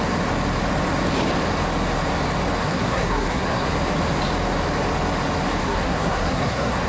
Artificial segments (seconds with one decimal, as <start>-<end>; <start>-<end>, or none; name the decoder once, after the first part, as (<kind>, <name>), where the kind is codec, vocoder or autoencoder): 2.6-3.7 (codec, SNAC); 5.6-6.9